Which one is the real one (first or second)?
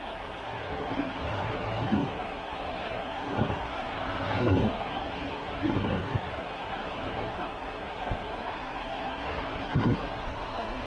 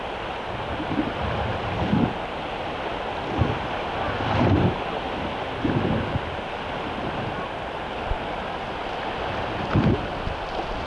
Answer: second